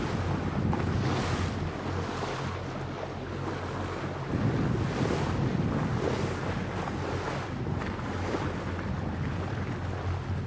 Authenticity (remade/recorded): recorded